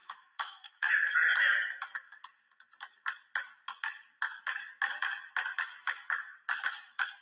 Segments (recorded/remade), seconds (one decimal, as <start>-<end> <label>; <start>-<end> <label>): 0.0-0.9 remade; 0.9-7.2 recorded